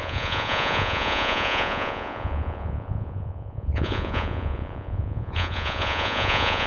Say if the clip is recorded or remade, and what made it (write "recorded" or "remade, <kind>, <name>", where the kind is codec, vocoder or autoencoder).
remade, vocoder, Vocos